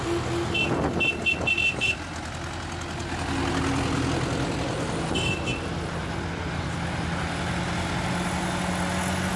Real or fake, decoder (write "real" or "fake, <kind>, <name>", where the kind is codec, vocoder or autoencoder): real